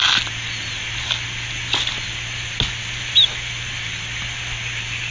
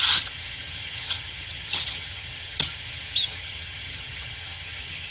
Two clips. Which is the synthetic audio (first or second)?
second